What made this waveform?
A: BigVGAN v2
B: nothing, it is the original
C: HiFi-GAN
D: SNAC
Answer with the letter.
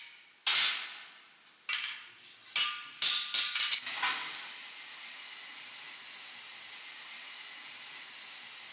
B